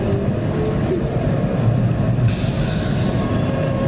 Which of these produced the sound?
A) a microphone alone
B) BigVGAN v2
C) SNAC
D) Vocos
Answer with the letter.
A